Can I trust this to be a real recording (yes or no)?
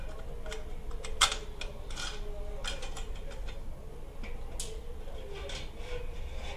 yes